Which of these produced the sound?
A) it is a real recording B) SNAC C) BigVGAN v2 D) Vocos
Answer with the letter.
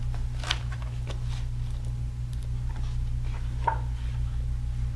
A